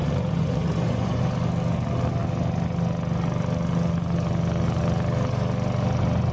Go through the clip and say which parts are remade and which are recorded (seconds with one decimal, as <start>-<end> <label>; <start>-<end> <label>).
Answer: 0.0-1.2 remade; 1.2-6.3 recorded